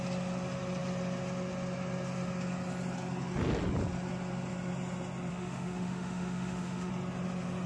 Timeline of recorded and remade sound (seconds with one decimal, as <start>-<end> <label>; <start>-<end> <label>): 0.0-5.3 recorded; 5.3-6.9 remade; 6.9-7.7 recorded

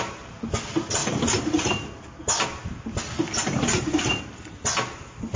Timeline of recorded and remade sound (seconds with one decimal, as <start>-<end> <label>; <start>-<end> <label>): 0.0-5.4 recorded

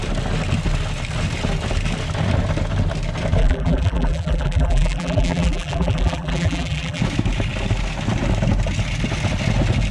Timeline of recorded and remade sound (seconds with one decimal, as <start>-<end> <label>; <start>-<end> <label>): 0.0-3.4 recorded; 3.4-7.0 remade; 7.0-9.9 recorded

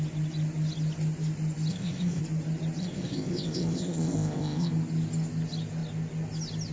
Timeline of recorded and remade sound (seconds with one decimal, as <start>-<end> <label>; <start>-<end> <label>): 0.0-1.7 recorded; 1.7-2.2 remade; 2.2-2.8 recorded; 2.8-4.7 remade; 4.7-6.7 recorded

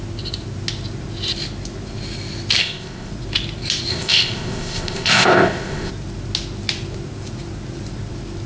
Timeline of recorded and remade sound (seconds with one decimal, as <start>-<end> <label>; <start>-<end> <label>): 0.0-2.6 recorded; 2.6-3.1 remade; 3.1-3.9 recorded; 3.9-5.9 remade; 5.9-8.5 recorded